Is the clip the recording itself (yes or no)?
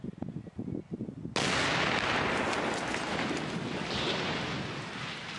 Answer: yes